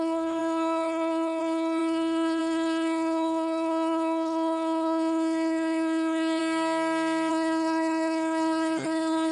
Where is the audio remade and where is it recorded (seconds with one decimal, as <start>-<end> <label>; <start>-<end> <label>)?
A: 0.0-6.4 remade; 6.4-7.3 recorded; 7.3-9.3 remade